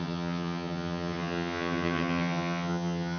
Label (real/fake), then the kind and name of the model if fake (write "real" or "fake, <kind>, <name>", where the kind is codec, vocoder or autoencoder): fake, vocoder, HiFi-GAN